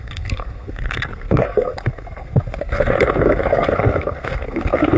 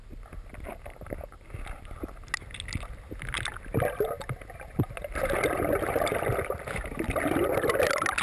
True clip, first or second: second